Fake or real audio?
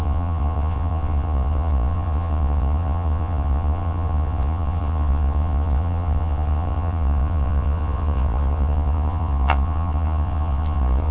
fake